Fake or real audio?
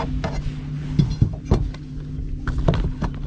real